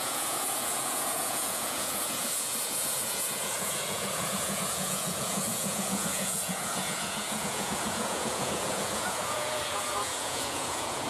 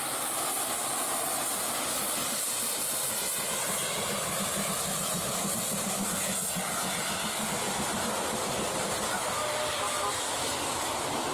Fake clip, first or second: first